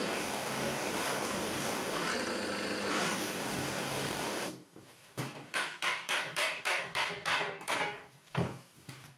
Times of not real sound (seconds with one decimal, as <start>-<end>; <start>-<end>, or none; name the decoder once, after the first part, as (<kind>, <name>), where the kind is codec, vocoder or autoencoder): 0.0-2.1 (codec, DAC); 2.9-9.2